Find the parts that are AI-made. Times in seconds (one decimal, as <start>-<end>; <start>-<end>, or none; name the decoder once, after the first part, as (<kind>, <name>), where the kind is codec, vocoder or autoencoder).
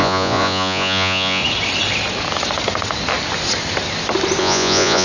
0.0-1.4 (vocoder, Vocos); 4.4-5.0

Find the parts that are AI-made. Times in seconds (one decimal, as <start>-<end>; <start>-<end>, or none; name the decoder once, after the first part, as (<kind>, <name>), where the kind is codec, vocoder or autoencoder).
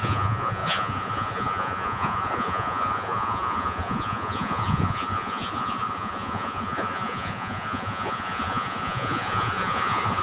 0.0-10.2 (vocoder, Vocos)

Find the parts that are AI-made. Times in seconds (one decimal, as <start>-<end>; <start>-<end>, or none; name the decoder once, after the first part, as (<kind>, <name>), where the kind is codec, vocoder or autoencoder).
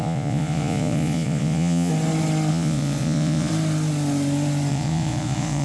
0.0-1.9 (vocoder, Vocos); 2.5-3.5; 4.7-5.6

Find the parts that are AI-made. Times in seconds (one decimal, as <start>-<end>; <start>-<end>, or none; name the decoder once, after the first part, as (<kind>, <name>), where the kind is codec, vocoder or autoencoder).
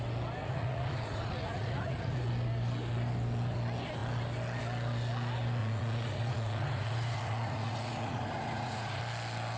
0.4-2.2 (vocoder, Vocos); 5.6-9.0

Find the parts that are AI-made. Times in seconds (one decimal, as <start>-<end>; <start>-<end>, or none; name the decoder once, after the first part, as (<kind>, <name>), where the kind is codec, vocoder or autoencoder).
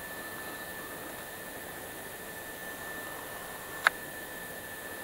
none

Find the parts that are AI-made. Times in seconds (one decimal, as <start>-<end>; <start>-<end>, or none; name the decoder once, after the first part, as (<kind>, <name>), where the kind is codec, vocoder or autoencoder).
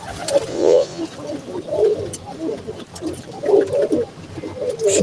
0.5-1.0 (vocoder, Vocos)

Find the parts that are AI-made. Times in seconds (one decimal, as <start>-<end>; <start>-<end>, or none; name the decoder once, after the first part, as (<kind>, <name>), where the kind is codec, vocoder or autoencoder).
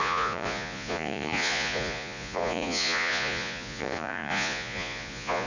0.0-5.5 (vocoder, Vocos)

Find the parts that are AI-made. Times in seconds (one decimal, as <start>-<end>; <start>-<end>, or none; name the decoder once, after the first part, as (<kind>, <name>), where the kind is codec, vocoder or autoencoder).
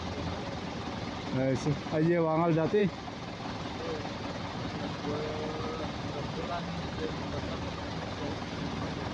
none